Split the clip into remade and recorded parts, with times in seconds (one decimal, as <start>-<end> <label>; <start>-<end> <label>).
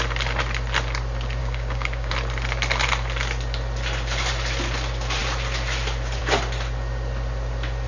0.0-1.4 recorded; 1.4-2.1 remade; 2.1-7.9 recorded